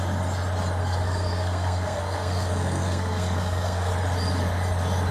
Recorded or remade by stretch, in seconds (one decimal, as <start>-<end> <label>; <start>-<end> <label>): 0.0-0.8 recorded; 0.8-3.9 remade; 3.9-5.1 recorded